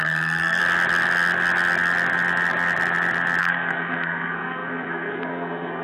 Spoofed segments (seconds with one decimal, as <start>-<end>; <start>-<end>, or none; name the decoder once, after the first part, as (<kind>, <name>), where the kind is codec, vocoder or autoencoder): 0.0-0.6 (codec, SNAC); 3.4-5.8